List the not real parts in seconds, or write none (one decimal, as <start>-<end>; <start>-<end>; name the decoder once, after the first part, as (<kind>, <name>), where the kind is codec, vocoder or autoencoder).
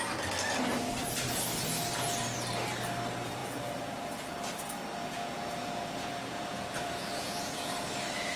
3.4-4.0 (vocoder, Vocos); 4.9-7.7